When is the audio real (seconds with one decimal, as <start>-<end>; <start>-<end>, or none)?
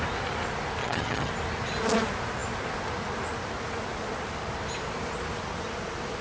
0.0-0.8; 1.3-6.2